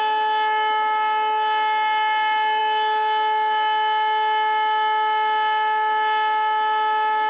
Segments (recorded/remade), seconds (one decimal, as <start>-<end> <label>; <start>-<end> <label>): 0.0-7.3 recorded